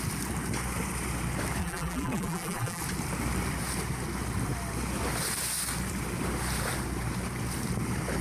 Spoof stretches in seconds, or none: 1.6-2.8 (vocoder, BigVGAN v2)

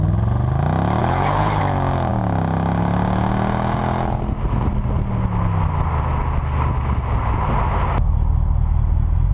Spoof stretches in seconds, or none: 1.0-1.6 (codec, HILCodec)

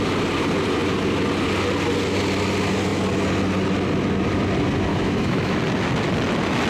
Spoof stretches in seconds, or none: 4.9-5.6 (autoencoder, DAC-VAE)

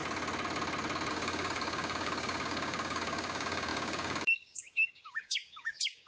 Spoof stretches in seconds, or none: 1.1-6.1 (codec, DAC)

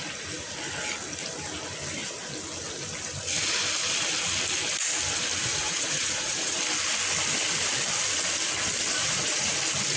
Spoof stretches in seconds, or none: 5.4-6.6 (vocoder, Vocos); 9.0-9.6

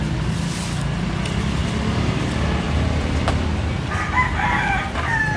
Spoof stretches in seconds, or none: none